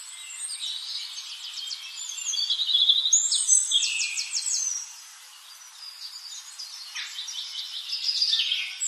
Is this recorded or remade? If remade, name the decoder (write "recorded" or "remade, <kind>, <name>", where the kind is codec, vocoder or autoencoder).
recorded